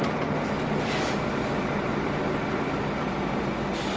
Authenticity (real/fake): real